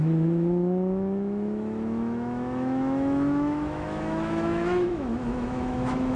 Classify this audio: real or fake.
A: fake